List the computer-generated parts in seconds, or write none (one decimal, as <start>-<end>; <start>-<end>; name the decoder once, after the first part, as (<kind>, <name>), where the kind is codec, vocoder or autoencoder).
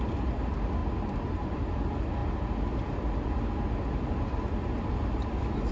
none